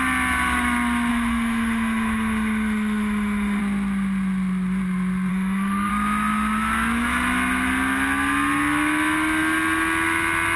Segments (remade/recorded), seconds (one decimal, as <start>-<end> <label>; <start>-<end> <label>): 0.0-1.1 recorded; 1.1-3.6 remade; 3.6-5.3 recorded; 5.3-5.9 remade; 5.9-10.6 recorded